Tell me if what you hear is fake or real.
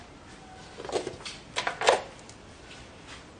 real